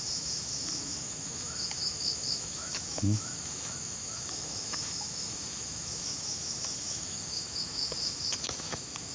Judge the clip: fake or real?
fake